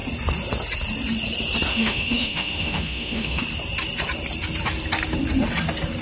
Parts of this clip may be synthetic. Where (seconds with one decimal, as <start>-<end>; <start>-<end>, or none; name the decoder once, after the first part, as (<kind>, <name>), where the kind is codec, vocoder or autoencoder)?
1.7-3.4 (autoencoder, DAC-VAE)